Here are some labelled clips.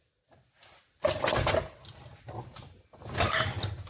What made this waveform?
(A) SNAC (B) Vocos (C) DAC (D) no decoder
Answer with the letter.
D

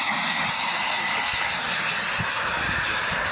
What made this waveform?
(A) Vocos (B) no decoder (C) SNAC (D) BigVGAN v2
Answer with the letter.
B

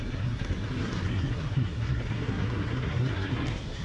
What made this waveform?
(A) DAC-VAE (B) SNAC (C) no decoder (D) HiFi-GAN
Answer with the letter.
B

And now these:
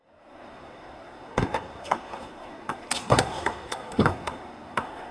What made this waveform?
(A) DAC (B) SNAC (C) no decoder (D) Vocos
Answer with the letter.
B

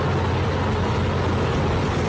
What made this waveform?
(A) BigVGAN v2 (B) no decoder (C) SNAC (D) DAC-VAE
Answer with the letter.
B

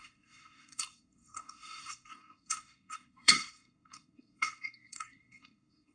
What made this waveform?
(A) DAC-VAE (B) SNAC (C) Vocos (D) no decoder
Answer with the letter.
B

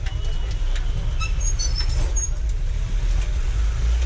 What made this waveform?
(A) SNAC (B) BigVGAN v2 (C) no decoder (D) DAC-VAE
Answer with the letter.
C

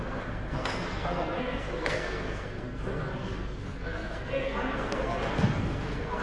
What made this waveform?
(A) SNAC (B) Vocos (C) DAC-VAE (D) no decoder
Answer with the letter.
A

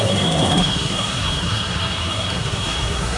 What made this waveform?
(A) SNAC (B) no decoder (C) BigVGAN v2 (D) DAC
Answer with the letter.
A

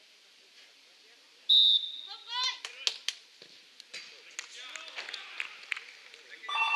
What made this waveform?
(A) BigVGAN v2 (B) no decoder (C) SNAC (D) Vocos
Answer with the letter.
B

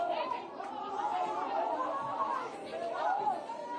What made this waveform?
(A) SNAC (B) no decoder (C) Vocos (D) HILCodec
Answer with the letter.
B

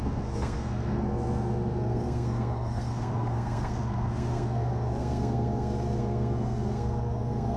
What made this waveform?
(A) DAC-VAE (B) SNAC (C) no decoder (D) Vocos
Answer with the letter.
B